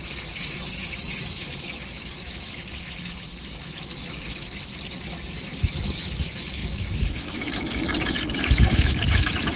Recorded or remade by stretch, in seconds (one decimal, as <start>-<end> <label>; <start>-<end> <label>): 0.0-4.7 remade; 4.7-5.6 recorded; 5.6-9.6 remade